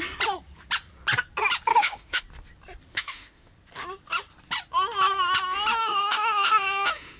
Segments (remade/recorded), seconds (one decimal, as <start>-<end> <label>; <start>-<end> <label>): 0.0-1.7 recorded; 1.7-2.2 remade; 2.2-2.9 recorded; 2.9-3.5 remade; 3.5-5.8 recorded; 5.8-7.2 remade